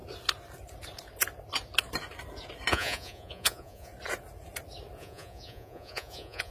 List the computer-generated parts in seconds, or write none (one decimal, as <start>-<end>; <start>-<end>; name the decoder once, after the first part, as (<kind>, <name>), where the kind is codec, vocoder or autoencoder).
2.7-3.9 (vocoder, Vocos); 5.0-6.5